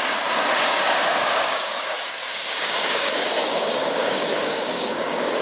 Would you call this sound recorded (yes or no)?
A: no